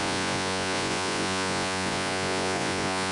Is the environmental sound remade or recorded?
remade